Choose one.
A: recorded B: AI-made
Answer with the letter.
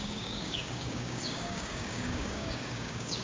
B